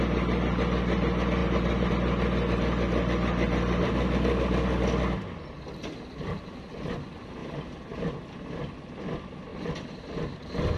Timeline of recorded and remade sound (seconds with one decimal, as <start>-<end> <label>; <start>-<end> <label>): 0.0-1.4 recorded; 1.4-1.9 remade; 1.9-7.4 recorded; 7.4-8.5 remade; 8.5-9.5 recorded; 9.5-10.1 remade; 10.1-10.8 recorded